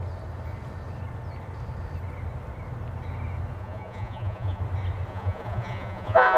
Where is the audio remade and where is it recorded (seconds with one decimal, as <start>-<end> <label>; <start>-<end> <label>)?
0.0-3.6 recorded; 3.6-4.6 remade; 4.6-5.1 recorded; 5.1-6.4 remade